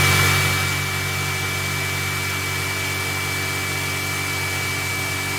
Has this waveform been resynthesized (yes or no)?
no